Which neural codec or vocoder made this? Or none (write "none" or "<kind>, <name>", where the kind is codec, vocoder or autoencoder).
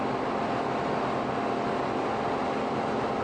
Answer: none